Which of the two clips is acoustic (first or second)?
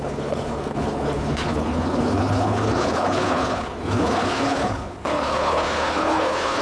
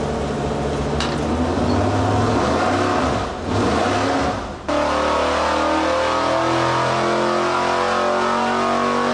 second